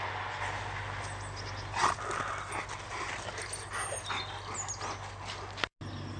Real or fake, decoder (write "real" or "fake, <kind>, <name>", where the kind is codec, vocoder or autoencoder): real